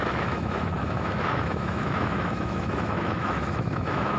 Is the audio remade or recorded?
remade